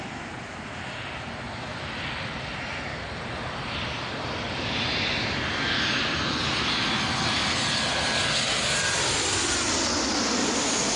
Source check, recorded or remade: recorded